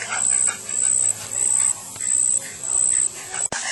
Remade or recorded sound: remade